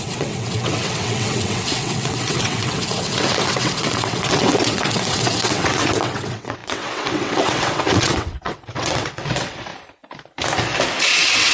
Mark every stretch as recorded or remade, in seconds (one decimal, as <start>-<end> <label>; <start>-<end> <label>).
0.0-9.7 remade; 9.7-11.0 recorded; 11.0-11.5 remade